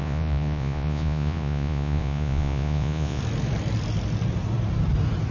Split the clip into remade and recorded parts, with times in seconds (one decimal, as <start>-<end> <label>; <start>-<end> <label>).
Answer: 0.0-3.2 remade; 3.2-5.3 recorded

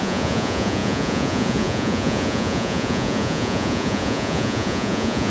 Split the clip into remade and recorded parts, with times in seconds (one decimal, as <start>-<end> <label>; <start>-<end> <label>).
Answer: 0.0-5.3 remade

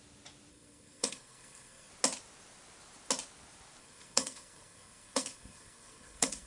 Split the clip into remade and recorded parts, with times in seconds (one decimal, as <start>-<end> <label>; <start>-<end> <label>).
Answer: 0.0-0.5 recorded; 0.5-1.9 remade; 1.9-3.8 recorded; 3.8-6.5 remade

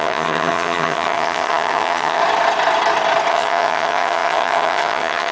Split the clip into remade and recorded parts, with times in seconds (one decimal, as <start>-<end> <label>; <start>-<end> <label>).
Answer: 0.0-2.2 remade; 2.2-3.3 recorded; 3.3-5.3 remade

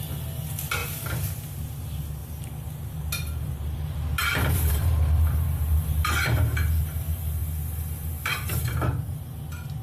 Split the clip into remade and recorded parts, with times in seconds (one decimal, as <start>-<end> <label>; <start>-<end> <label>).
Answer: 0.0-7.4 recorded; 7.4-9.2 remade; 9.2-9.8 recorded

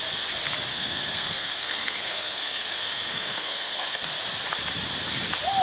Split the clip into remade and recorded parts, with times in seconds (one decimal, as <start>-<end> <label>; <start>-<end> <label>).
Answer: 0.0-0.7 recorded; 0.7-4.1 remade; 4.1-5.6 recorded

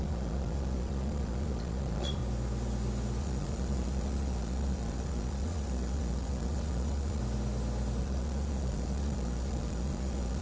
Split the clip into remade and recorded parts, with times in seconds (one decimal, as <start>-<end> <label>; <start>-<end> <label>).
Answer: 0.0-2.2 remade; 2.2-3.2 recorded; 3.2-7.2 remade; 7.2-8.0 recorded; 8.0-10.4 remade

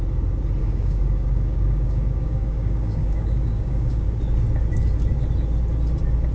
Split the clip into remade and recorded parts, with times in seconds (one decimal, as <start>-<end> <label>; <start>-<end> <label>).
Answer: 0.0-0.6 recorded; 0.6-4.2 remade; 4.2-6.3 recorded